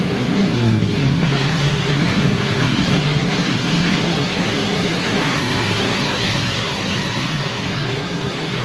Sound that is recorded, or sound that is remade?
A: remade